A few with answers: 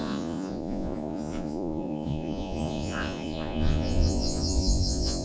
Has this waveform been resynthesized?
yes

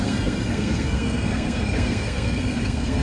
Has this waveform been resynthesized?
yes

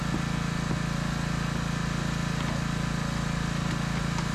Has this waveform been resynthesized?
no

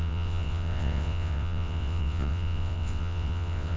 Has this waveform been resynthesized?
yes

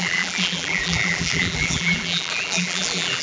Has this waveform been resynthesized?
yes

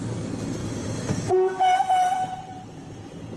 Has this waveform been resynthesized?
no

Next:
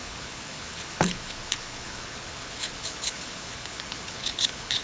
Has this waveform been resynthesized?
yes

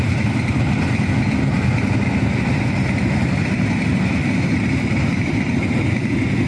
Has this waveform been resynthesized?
no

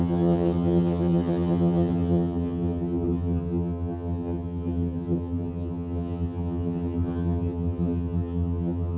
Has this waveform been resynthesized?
yes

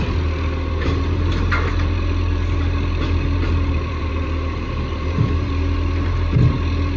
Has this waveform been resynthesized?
yes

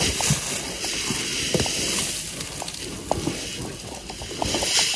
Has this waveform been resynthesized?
no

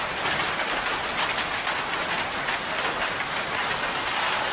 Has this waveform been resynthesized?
no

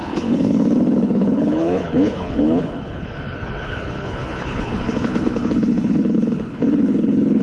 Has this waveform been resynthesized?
yes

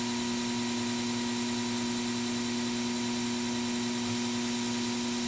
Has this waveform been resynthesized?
no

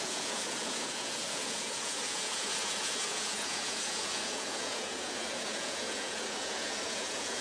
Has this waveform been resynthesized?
yes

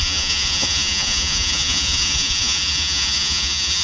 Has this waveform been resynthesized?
yes